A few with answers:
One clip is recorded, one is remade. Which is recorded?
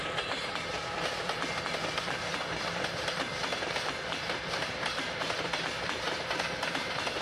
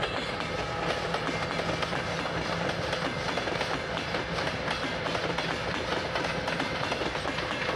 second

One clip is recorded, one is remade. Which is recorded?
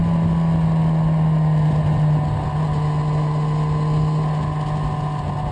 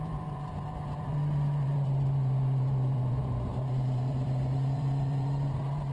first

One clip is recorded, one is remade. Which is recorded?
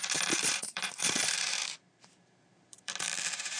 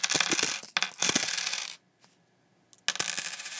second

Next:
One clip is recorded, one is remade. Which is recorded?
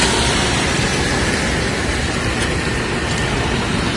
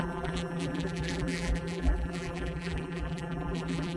first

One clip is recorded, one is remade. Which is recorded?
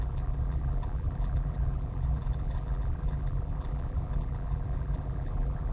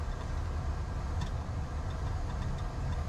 second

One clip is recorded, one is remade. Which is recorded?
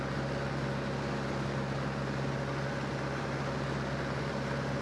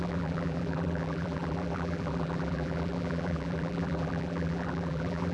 first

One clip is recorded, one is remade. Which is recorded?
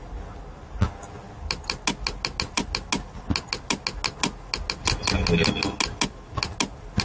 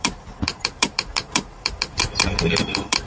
first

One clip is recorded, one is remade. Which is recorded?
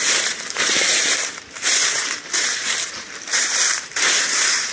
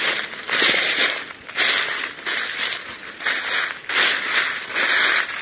second